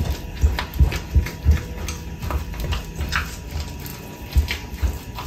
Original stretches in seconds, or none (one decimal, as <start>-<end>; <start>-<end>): 0.0-5.3